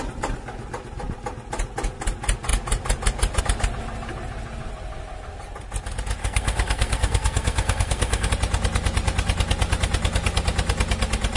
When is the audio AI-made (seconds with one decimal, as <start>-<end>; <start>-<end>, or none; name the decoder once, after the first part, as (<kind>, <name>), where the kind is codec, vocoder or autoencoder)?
6.2-8.3 (codec, SNAC)